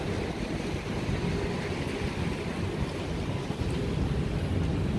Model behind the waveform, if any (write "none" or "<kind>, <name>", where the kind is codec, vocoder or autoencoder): none